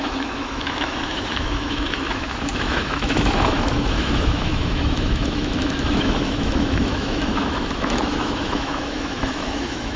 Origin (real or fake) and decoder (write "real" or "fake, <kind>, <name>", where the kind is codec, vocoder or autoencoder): fake, autoencoder, DAC-VAE